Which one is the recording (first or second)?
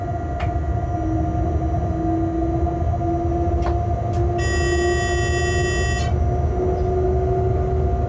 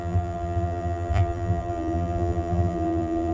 first